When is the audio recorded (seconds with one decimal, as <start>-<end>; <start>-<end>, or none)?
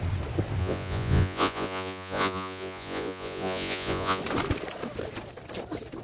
0.0-0.6; 4.2-6.0